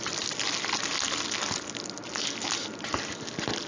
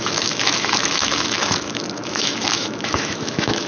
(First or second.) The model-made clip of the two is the second